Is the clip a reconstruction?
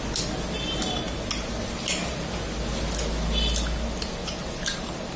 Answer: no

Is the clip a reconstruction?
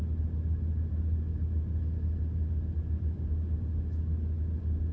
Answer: no